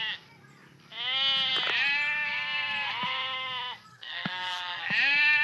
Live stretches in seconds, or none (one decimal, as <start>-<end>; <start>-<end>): 0.0-3.9; 4.8-5.4